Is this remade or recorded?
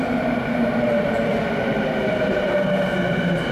remade